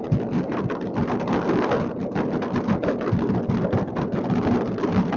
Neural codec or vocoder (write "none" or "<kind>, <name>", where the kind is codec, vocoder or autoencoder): none